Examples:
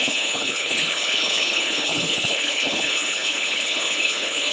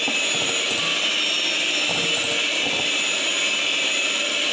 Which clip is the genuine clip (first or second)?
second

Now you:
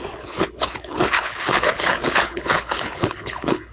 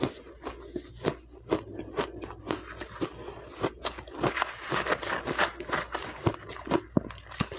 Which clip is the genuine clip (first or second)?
second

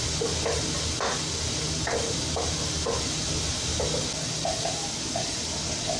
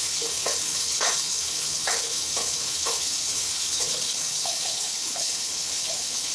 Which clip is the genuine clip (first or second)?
first